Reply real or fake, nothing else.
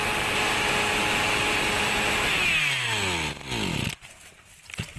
real